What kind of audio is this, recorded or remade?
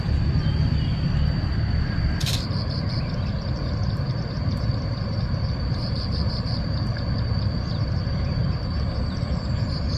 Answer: remade